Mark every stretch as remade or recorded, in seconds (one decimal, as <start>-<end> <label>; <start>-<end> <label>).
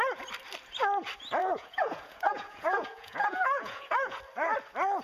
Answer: 0.0-1.4 recorded; 1.4-4.2 remade; 4.2-5.0 recorded